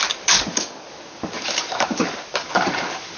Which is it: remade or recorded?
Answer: remade